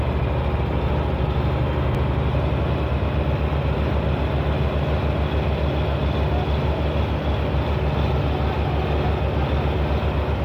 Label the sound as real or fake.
real